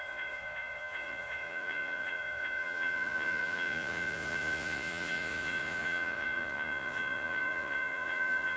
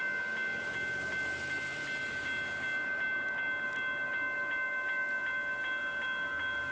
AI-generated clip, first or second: first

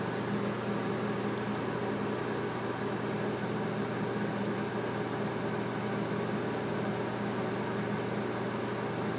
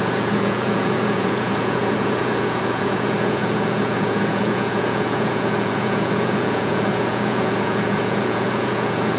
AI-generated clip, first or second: second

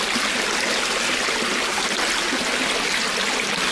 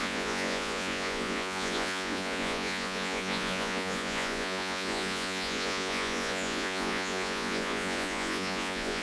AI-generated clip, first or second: second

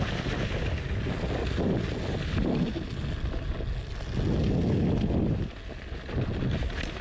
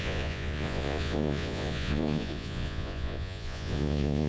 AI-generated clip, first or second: second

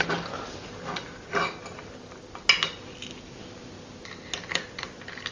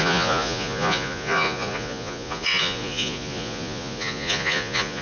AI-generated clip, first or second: second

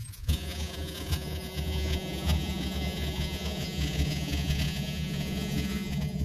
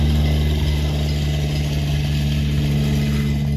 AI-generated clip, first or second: first